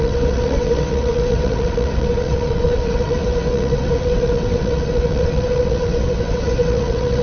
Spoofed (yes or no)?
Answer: yes